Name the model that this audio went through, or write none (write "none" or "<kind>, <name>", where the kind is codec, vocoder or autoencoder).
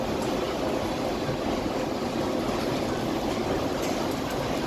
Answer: none